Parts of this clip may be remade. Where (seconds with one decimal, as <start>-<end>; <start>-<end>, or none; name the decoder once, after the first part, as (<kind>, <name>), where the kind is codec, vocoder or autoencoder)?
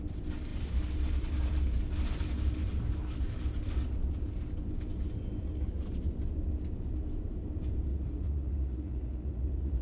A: 7.9-9.8 (vocoder, Vocos)